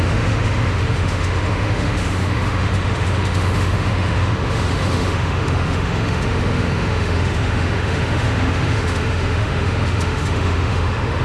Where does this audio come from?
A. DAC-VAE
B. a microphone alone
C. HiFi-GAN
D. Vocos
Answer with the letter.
A